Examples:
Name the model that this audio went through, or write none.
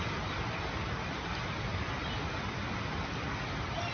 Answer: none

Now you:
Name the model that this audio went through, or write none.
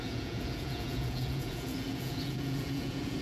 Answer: vocoder, Vocos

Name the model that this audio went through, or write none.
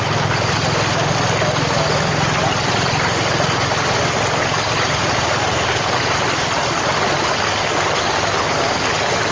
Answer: none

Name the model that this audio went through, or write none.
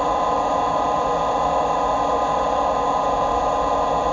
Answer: none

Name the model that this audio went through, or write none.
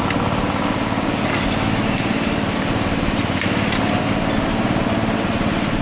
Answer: none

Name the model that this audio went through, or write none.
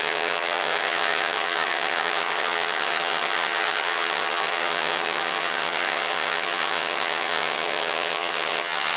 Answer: vocoder, HiFi-GAN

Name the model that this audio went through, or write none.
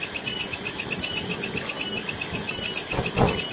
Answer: none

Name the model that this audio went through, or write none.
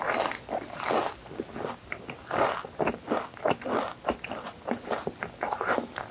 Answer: none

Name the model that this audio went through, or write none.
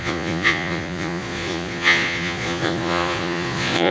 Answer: vocoder, Vocos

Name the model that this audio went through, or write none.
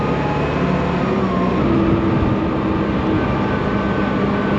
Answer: none